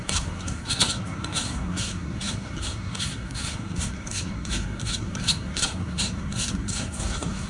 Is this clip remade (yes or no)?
yes